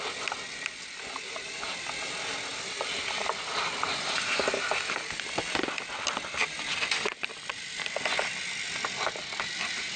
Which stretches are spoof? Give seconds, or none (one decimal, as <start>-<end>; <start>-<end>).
2.5-7.5